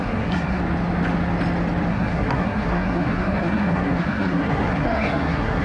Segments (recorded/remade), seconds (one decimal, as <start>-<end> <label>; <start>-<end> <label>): 0.0-0.6 remade; 0.6-1.9 recorded; 1.9-5.6 remade

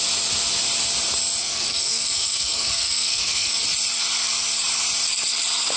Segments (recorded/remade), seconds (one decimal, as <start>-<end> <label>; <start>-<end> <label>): 0.0-1.4 recorded; 1.4-3.6 remade; 3.6-5.8 recorded

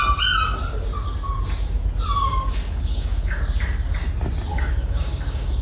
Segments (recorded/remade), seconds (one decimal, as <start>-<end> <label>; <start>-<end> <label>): 0.0-2.3 recorded; 2.3-3.4 remade; 3.4-4.5 recorded; 4.5-5.6 remade

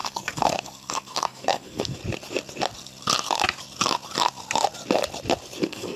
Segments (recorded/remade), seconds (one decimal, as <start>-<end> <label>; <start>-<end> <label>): 0.0-2.0 remade; 2.0-5.6 recorded; 5.6-6.0 remade

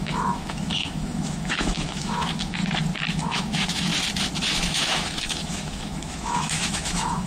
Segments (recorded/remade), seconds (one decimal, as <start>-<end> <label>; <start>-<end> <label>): 0.0-2.6 remade; 2.6-3.1 recorded; 3.1-3.9 remade; 3.9-4.5 recorded; 4.5-7.3 remade

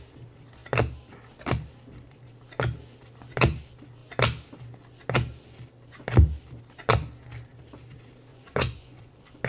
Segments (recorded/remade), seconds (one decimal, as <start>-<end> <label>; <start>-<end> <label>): 0.0-8.3 recorded; 8.3-9.1 remade; 9.1-9.5 recorded

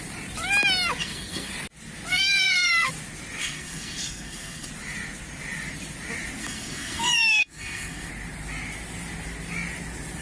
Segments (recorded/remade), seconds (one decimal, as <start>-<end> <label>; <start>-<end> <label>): 0.0-1.0 recorded; 1.0-1.5 remade; 1.5-2.1 recorded; 2.1-2.9 remade; 2.9-3.4 recorded; 3.4-4.7 remade; 4.7-6.4 recorded; 6.4-8.1 remade; 8.1-10.2 recorded